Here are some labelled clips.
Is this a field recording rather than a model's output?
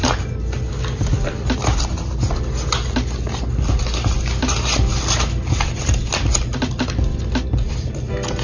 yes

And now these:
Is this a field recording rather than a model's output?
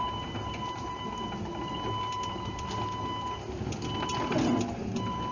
yes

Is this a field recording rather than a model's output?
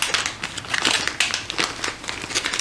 yes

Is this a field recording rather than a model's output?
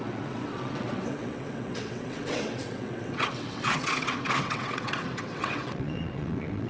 no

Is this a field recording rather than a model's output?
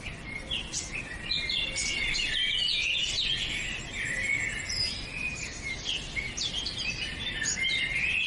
yes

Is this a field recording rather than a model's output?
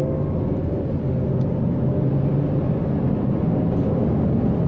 yes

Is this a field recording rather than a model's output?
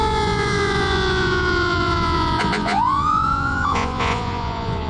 no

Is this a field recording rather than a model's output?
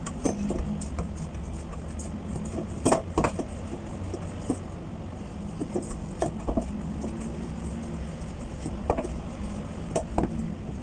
yes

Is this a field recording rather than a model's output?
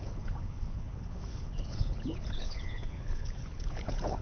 no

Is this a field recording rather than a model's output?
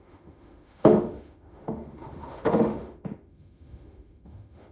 no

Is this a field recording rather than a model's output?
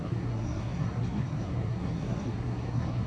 no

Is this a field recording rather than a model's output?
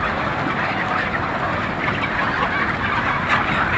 yes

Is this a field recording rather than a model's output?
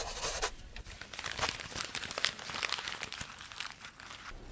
yes